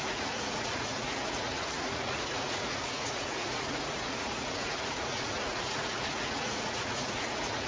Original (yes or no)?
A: no